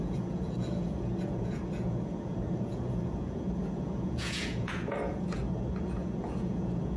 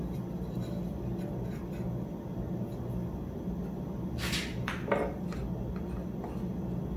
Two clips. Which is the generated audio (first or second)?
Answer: first